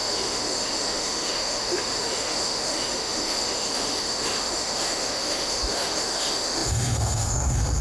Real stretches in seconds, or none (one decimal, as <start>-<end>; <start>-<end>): none